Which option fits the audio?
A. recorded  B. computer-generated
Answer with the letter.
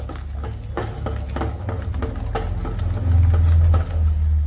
A